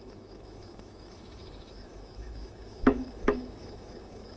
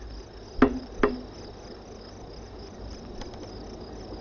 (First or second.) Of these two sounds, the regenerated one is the first